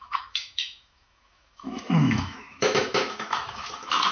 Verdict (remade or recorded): remade